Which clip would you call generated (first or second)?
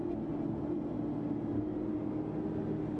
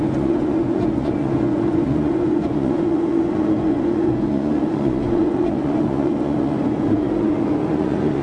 second